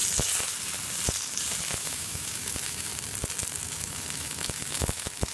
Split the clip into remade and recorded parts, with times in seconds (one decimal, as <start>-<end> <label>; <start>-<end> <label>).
0.0-1.7 recorded; 1.7-2.9 remade; 2.9-3.6 recorded; 3.6-5.3 remade